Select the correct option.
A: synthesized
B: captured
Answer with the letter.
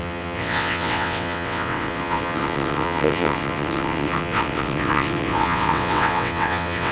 A